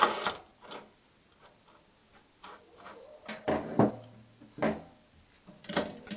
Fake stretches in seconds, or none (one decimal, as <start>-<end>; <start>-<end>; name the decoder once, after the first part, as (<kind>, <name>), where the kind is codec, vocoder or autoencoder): none